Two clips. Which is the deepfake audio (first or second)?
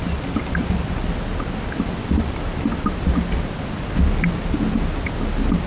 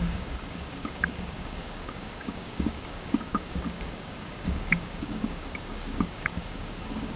second